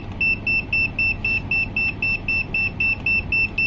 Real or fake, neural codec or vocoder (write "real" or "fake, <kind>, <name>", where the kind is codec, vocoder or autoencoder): real